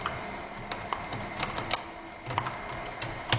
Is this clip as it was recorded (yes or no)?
yes